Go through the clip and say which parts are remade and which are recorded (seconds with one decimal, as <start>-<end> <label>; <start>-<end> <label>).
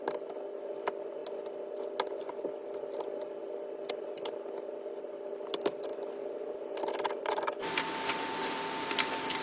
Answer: 0.0-9.4 recorded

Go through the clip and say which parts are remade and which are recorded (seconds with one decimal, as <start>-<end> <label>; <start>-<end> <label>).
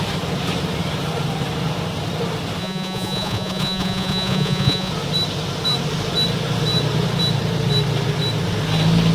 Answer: 0.0-2.6 recorded; 2.6-4.9 remade; 4.9-9.1 recorded